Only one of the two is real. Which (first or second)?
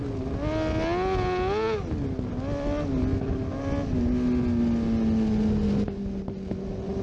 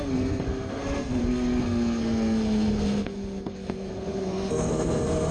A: first